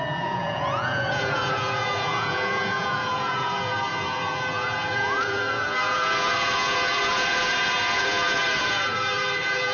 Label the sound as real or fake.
fake